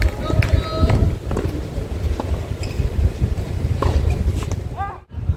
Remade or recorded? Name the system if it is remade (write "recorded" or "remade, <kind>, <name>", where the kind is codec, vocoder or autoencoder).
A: recorded